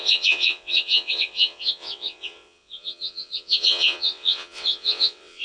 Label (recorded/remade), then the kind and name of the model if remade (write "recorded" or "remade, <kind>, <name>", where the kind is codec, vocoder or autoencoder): remade, vocoder, WaveNeXt